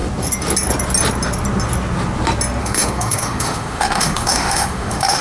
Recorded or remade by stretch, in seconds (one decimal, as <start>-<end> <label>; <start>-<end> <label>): 0.0-2.6 recorded; 2.6-5.2 remade

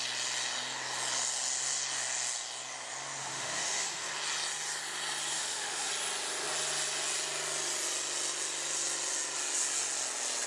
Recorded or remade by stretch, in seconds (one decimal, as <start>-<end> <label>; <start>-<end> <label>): 0.0-3.2 recorded; 3.2-4.1 remade; 4.1-5.3 recorded; 5.3-5.9 remade; 5.9-10.5 recorded

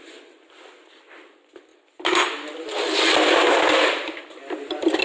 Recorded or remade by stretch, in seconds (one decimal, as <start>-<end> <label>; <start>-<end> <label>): 0.0-5.0 recorded